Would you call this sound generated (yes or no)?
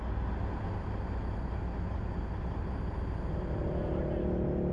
no